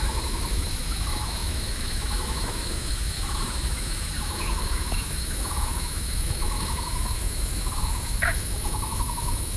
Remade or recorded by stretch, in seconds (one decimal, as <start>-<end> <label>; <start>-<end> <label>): 0.0-9.6 remade

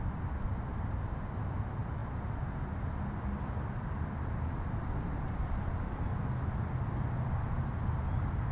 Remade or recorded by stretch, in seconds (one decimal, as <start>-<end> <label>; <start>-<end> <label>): 0.0-8.5 recorded

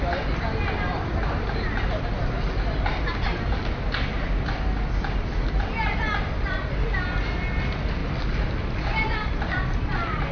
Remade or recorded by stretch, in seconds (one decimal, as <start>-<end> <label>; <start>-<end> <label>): 0.0-10.3 recorded

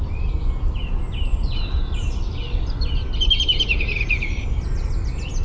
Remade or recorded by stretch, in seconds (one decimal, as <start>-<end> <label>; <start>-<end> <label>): 0.0-1.3 recorded; 1.3-4.3 remade; 4.3-5.4 recorded

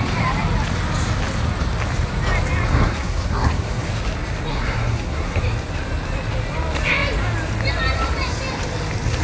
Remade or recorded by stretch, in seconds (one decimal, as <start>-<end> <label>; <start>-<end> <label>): 0.0-2.7 recorded; 2.7-3.9 remade; 3.9-4.5 recorded; 4.5-5.4 remade; 5.4-9.2 recorded

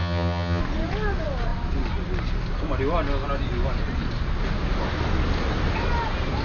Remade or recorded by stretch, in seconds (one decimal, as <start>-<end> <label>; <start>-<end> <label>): 0.0-0.6 remade; 0.6-6.4 recorded